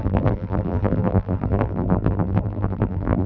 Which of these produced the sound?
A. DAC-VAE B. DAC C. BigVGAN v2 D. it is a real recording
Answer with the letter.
C